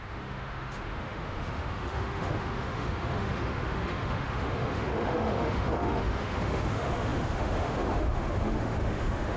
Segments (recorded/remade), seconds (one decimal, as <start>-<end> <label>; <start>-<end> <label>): 0.0-9.4 remade